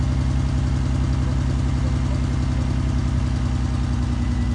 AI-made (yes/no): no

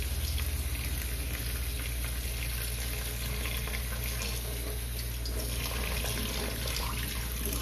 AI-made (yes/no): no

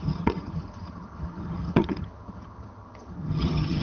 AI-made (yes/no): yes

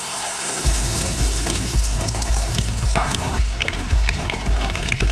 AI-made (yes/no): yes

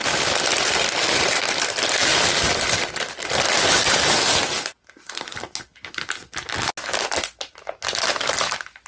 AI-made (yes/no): no